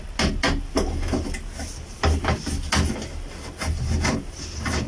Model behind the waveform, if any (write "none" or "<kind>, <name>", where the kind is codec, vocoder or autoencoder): none